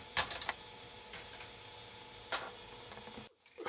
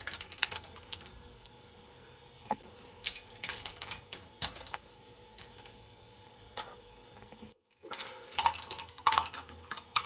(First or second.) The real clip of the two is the first